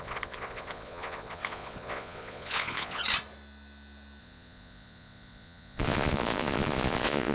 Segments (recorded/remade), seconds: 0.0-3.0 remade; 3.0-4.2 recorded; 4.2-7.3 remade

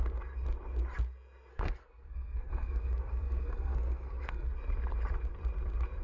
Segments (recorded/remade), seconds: 0.0-1.5 recorded; 1.5-4.5 remade; 4.5-6.0 recorded

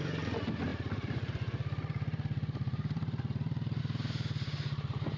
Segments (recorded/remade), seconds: 0.0-0.7 recorded; 0.7-3.8 remade; 3.8-5.2 recorded

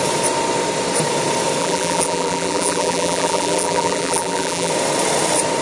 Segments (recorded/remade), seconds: 0.0-1.6 recorded; 1.6-4.7 remade; 4.7-5.6 recorded

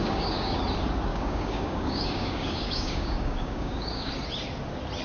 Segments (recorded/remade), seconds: 0.0-0.6 remade; 0.6-1.1 recorded; 1.1-4.1 remade; 4.1-5.0 recorded